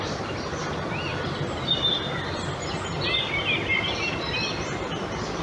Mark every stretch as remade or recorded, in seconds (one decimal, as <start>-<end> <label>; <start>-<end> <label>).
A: 0.0-5.4 recorded

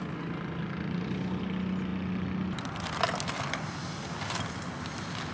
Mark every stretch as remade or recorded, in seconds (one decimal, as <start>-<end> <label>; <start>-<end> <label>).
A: 0.0-5.3 recorded

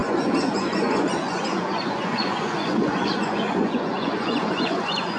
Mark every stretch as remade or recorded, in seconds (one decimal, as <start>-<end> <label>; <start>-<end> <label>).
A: 0.0-5.2 remade

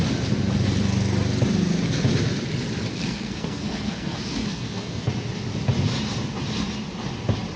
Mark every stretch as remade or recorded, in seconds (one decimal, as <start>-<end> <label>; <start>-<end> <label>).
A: 0.0-2.9 recorded; 2.9-5.1 remade; 5.1-7.6 recorded